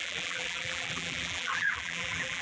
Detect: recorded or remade remade